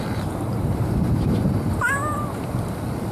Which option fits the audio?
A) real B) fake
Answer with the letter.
B